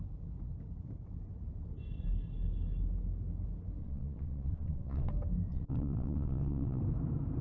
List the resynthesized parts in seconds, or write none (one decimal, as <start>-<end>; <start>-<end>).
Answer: 3.8-5.1; 5.5-6.8